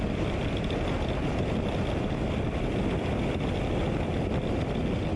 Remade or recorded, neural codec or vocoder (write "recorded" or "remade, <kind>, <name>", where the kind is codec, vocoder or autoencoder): recorded